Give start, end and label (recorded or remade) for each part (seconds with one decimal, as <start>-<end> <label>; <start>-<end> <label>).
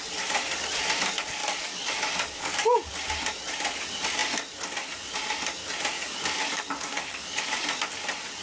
0.0-1.4 recorded; 1.4-2.9 remade; 2.9-5.9 recorded; 5.9-7.6 remade; 7.6-8.4 recorded